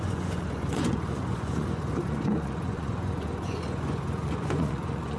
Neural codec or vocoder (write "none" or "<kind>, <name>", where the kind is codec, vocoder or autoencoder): vocoder, Vocos